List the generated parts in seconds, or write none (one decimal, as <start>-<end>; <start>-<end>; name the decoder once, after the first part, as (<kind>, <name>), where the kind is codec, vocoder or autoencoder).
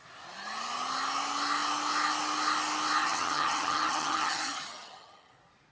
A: 3.0-5.3 (vocoder, HiFi-GAN)